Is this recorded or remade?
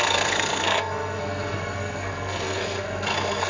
remade